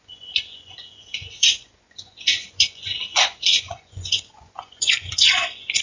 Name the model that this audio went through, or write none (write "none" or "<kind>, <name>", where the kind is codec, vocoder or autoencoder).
vocoder, Vocos